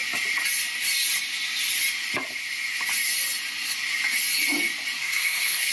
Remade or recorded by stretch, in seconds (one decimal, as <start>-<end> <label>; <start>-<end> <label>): 0.0-5.0 recorded; 5.0-5.7 remade